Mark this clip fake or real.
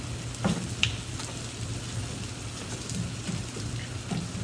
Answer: real